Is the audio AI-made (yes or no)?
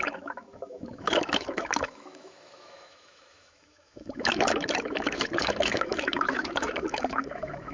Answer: yes